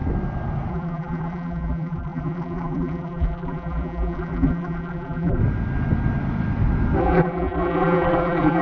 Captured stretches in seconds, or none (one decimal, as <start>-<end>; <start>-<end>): 0.0-0.7; 5.4-7.0